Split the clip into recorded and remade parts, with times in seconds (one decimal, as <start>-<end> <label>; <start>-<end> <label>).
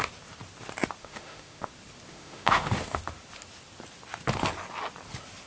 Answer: 0.0-1.0 recorded; 1.0-1.7 remade; 1.7-2.1 recorded; 2.1-3.0 remade; 3.0-5.5 recorded